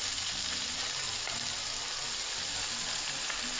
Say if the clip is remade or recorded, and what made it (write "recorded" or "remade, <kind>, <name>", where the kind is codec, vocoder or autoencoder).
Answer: recorded